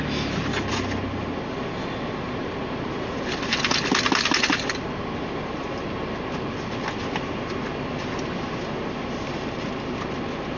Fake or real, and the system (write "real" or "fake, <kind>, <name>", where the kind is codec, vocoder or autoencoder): real